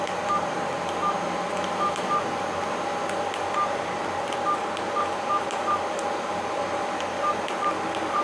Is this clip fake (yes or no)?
no